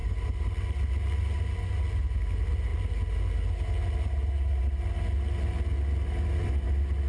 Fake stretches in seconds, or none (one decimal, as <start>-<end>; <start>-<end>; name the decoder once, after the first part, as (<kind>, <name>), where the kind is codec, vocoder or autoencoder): none